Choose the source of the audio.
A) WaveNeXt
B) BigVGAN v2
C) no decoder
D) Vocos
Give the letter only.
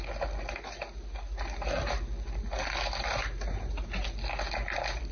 C